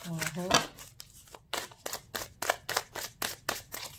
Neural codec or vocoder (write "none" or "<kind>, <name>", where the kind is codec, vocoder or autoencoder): none